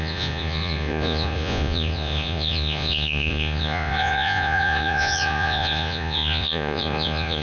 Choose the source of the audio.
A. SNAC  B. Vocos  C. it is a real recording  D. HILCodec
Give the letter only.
B